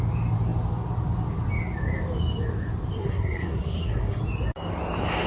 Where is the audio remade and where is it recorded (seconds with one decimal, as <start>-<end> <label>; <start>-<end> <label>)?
0.0-3.0 recorded; 3.0-4.2 remade; 4.2-5.3 recorded